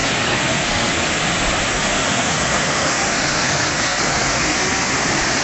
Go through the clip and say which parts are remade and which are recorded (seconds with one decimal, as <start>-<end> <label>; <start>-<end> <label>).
0.0-1.2 remade; 1.2-1.7 recorded; 1.7-4.9 remade; 4.9-5.4 recorded